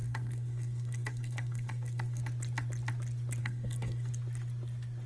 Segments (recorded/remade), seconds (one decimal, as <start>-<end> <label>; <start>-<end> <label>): 0.0-2.2 remade; 2.2-3.4 recorded; 3.4-4.1 remade; 4.1-5.1 recorded